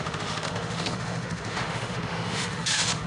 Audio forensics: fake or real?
fake